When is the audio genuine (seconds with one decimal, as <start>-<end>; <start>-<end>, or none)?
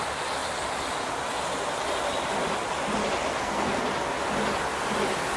0.0-3.3; 3.8-5.4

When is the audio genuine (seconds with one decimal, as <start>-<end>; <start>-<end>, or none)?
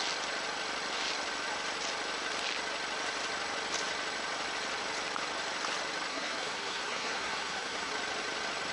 0.0-6.1; 7.9-8.7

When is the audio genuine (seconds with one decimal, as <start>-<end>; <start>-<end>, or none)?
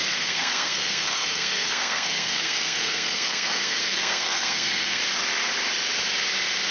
5.0-6.7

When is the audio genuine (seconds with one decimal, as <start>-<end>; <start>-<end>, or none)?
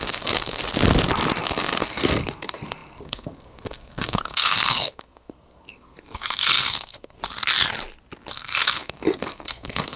0.6-1.4; 7.2-8.3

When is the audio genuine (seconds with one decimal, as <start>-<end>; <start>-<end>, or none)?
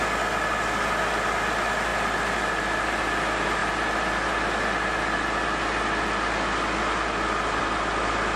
0.0-8.4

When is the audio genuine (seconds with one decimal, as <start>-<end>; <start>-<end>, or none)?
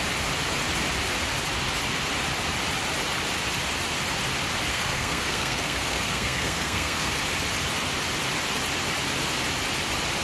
0.0-4.7; 7.2-10.2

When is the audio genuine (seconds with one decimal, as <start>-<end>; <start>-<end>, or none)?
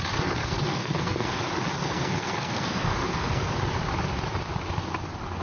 0.0-0.4; 1.4-1.8; 3.5-5.4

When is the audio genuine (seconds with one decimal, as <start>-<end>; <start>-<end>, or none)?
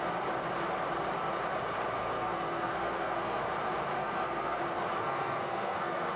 0.0-2.0; 3.4-4.0; 4.6-5.0